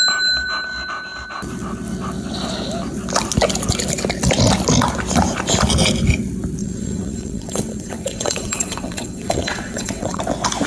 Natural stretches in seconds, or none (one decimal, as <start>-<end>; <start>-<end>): 0.0-6.6; 10.2-10.7